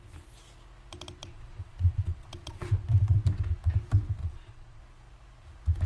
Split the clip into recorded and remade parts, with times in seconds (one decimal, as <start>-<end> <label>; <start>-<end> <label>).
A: 0.0-1.2 recorded; 1.2-2.7 remade; 2.7-4.2 recorded; 4.2-4.8 remade; 4.8-5.9 recorded